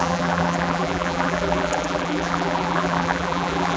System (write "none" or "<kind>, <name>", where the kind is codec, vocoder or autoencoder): vocoder, BigVGAN v2